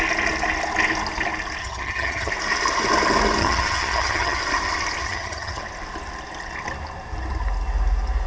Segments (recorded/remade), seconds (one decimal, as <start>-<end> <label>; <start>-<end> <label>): 0.0-1.6 recorded; 1.6-2.3 remade; 2.3-3.4 recorded; 3.4-4.4 remade; 4.4-5.0 recorded; 5.0-5.6 remade; 5.6-8.3 recorded